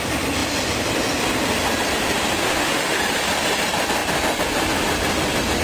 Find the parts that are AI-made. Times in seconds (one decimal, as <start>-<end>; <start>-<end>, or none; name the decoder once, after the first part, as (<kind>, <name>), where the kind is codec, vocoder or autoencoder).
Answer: 2.4-3.0 (autoencoder, DAC-VAE)